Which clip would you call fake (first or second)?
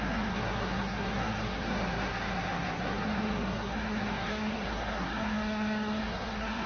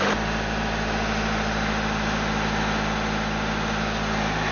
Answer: first